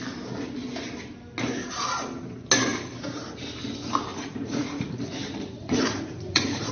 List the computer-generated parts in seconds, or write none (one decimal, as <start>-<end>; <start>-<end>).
4.1-5.0; 5.6-6.7